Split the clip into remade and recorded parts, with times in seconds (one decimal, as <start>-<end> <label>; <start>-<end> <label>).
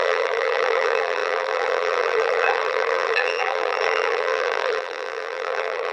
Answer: 0.0-5.9 remade